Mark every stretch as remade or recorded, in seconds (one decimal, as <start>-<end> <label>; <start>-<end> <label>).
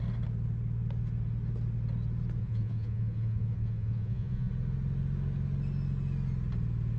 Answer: 0.0-2.4 recorded; 2.4-4.5 remade; 4.5-7.0 recorded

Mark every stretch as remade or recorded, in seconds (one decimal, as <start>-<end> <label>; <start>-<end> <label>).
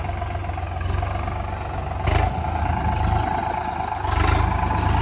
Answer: 0.0-5.0 recorded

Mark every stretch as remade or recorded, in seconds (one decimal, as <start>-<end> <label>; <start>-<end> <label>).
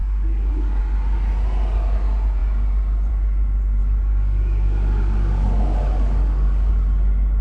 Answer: 0.0-0.8 remade; 0.8-3.8 recorded; 3.8-6.7 remade; 6.7-7.4 recorded